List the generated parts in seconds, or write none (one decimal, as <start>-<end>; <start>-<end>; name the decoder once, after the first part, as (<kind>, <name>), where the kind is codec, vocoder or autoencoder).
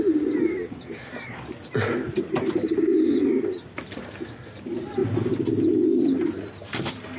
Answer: none